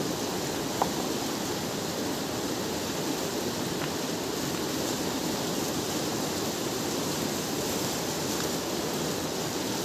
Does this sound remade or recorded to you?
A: recorded